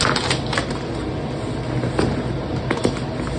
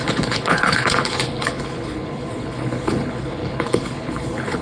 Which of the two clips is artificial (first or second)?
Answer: second